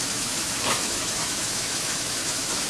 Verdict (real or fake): fake